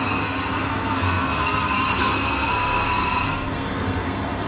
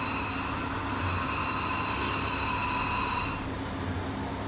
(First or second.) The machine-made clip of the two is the first